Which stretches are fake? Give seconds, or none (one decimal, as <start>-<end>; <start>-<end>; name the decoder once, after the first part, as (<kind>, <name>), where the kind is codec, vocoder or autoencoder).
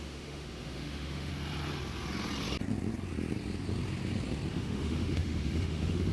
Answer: 0.0-1.3 (autoencoder, DAC-VAE); 4.5-6.1